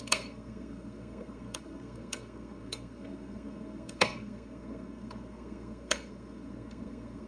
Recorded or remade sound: remade